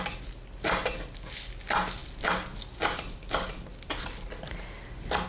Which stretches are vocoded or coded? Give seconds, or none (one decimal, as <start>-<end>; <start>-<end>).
none